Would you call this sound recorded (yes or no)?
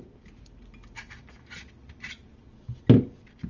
yes